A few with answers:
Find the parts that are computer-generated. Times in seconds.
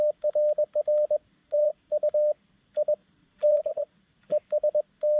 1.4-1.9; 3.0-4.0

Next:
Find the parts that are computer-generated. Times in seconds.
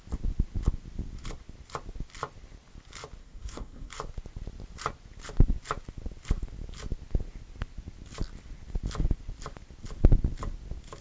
3.2-3.9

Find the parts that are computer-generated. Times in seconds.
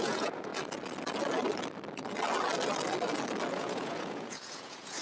0.0-0.5; 3.5-5.0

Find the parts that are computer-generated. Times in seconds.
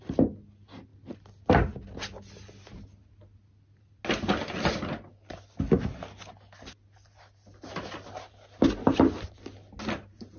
none